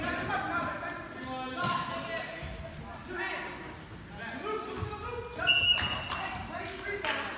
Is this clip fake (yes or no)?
no